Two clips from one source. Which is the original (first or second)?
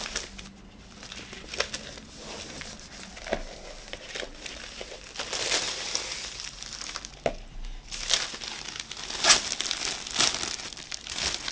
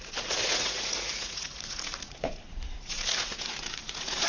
first